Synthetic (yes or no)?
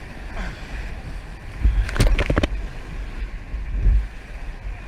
no